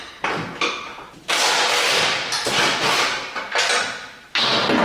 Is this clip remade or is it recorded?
recorded